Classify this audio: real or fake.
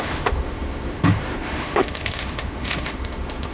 fake